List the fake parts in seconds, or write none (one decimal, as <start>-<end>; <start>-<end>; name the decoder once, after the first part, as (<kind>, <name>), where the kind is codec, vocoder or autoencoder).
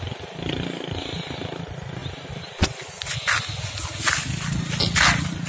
none